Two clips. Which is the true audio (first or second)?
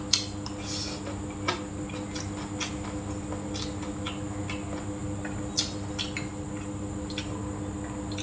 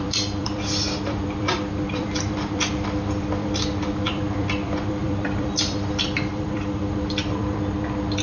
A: first